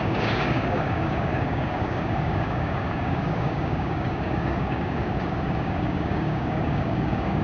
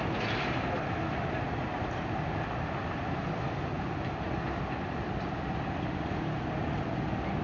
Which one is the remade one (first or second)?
first